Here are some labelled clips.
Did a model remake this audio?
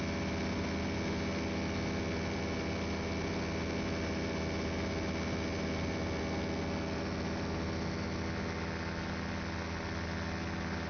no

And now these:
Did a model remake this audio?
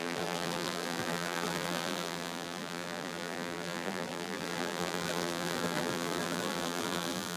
yes